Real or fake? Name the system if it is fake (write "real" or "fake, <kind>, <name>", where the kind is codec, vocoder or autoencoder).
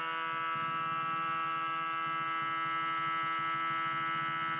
real